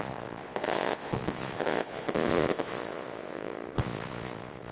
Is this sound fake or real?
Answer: fake